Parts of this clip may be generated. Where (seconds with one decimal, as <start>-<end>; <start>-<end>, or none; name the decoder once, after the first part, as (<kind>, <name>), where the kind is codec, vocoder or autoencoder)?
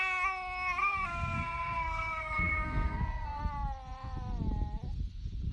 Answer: 0.8-3.4 (codec, SNAC)